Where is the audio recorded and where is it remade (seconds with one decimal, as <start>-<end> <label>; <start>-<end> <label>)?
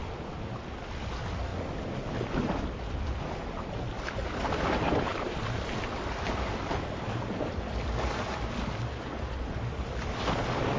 0.0-10.8 recorded